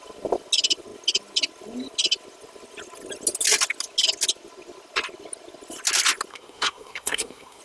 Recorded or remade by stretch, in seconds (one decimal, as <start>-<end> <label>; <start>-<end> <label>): 0.0-6.3 recorded; 6.3-7.6 remade